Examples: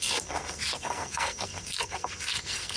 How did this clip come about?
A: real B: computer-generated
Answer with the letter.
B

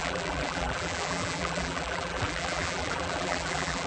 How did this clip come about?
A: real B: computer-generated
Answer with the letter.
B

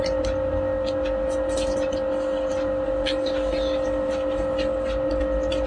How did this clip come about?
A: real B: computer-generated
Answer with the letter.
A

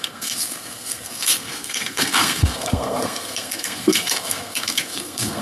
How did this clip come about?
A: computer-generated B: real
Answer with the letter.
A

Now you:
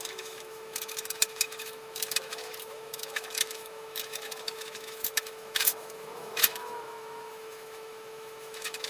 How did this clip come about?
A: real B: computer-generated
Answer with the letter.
B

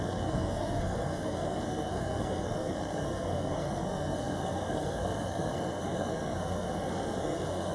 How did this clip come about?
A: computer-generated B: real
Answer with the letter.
A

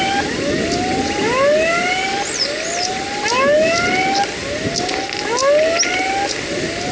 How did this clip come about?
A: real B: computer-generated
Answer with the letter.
A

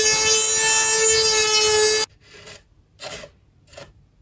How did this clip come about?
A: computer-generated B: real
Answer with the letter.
B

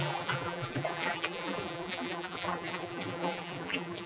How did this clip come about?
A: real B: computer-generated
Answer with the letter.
B